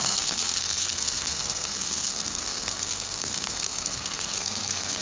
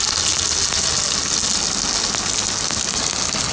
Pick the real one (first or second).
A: second